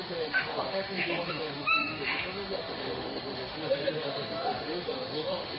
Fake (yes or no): yes